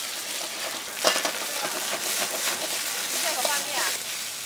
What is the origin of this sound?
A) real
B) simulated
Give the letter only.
A